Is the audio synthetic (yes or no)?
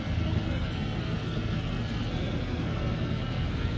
yes